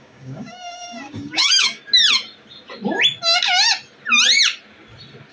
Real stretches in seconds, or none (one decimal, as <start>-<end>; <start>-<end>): 1.8-5.3